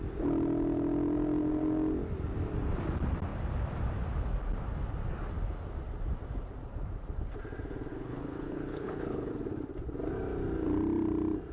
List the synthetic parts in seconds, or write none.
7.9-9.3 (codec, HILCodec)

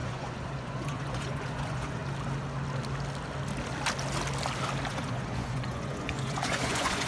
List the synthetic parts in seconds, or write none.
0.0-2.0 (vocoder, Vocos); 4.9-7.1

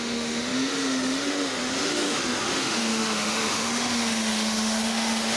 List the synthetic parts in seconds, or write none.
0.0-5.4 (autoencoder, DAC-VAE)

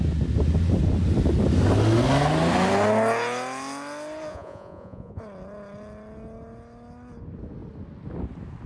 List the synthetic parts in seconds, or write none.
4.3-5.2 (vocoder, Vocos)